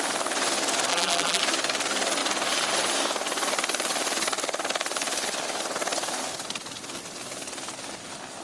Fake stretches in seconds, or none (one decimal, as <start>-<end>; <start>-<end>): 0.9-1.4